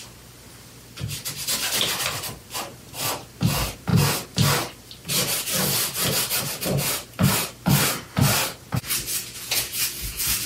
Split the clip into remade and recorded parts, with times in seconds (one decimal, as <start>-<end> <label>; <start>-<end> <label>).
0.0-9.2 recorded; 9.2-10.5 remade